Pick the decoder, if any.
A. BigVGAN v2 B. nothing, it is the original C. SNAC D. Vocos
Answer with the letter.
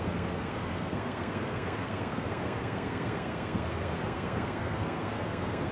C